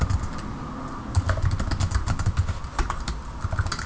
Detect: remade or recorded recorded